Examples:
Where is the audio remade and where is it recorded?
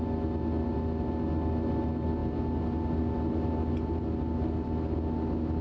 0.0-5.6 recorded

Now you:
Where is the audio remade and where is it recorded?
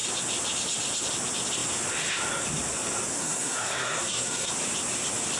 0.0-3.2 recorded; 3.2-4.5 remade; 4.5-5.4 recorded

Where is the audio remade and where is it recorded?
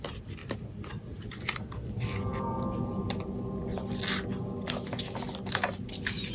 0.0-6.3 recorded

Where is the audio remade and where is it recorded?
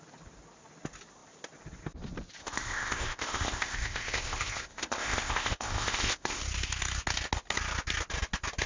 0.0-2.4 recorded; 2.4-6.4 remade; 6.4-8.7 recorded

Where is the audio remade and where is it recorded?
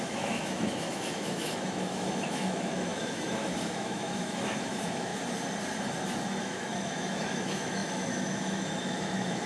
0.0-5.1 remade; 5.1-6.4 recorded; 6.4-9.5 remade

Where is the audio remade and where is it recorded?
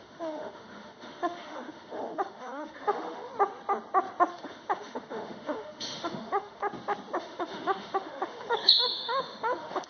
0.0-3.3 remade; 3.3-4.3 recorded; 4.3-6.6 remade; 6.6-7.2 recorded; 7.2-9.9 remade